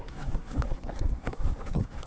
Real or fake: fake